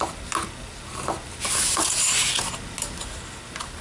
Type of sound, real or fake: real